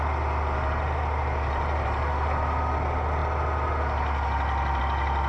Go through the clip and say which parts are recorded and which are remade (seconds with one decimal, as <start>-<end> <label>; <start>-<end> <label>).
0.0-5.3 recorded